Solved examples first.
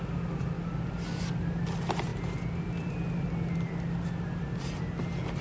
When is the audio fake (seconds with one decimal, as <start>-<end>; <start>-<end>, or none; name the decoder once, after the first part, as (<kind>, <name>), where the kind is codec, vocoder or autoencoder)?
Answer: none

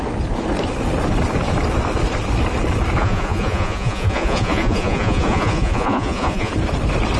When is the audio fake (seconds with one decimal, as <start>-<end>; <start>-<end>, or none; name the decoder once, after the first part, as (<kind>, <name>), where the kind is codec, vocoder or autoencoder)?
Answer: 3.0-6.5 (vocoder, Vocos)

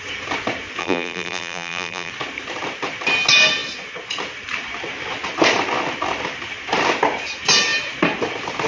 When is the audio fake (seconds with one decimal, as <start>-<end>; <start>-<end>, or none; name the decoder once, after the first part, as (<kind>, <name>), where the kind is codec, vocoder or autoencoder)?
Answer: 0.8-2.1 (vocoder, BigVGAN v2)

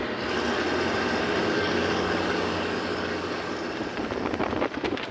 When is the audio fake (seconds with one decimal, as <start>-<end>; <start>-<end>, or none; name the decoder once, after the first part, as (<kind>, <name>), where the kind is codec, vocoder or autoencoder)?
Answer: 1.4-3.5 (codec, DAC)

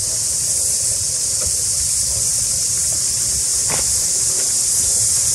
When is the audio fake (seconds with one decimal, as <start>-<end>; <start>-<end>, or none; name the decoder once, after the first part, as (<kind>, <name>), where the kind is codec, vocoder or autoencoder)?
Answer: 2.1-3.5 (vocoder, BigVGAN v2); 4.5-5.3

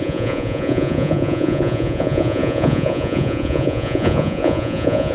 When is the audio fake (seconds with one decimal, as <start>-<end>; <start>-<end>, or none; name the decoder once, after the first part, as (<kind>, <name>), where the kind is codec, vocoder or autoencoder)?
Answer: 0.0-5.1 (vocoder, Vocos)

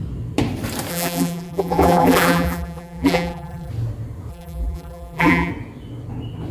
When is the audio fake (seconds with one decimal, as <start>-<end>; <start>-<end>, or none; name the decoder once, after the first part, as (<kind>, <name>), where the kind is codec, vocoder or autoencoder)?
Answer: 0.9-3.7 (vocoder, BigVGAN v2); 4.3-5.5

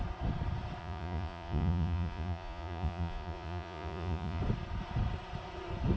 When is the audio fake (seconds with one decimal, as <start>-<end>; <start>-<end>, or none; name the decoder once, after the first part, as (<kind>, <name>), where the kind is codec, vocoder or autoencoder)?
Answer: 0.8-4.4 (vocoder, Vocos)